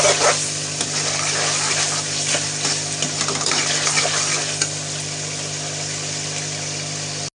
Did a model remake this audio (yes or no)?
no